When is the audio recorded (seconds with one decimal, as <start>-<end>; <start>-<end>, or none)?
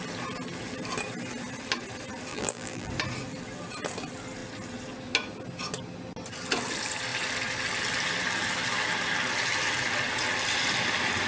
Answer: 0.0-2.3; 2.9-11.3